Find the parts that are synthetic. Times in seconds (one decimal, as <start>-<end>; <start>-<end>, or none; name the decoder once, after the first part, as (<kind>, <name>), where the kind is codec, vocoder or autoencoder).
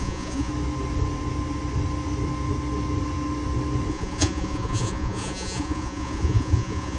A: 0.0-0.5 (vocoder, Vocos); 3.9-7.0